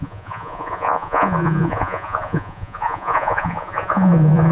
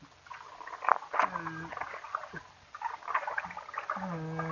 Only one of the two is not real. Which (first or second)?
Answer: first